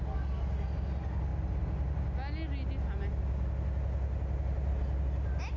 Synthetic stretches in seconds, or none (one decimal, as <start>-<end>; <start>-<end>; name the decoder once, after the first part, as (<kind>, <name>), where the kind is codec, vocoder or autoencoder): none